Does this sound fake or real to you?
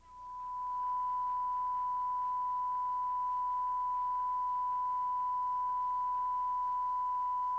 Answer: real